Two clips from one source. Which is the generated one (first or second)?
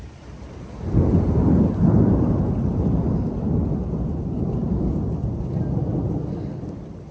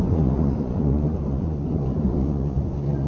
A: second